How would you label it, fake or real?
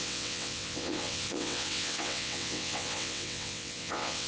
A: fake